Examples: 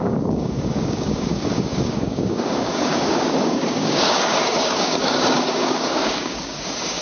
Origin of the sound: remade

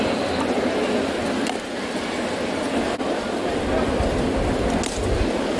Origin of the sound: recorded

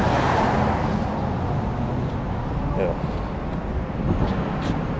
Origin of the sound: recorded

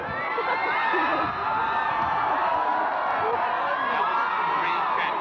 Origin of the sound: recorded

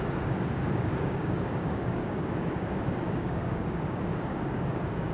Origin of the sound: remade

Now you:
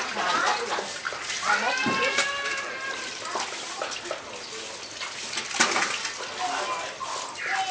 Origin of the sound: recorded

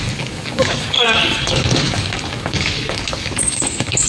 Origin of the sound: remade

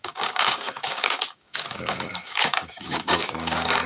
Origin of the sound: remade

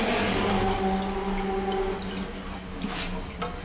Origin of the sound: recorded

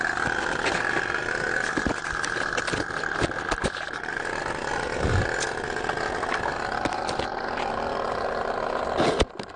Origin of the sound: recorded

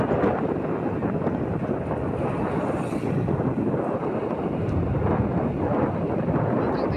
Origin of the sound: recorded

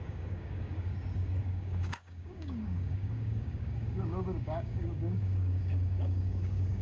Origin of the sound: remade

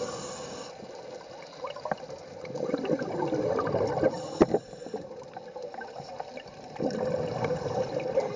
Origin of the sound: recorded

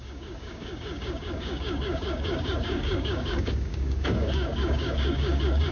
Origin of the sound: remade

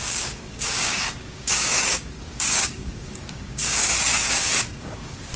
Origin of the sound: remade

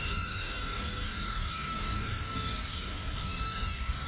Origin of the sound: remade